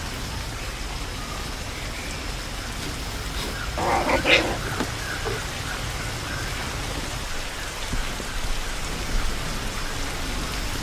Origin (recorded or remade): recorded